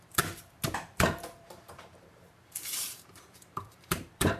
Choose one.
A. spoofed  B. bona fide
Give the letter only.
A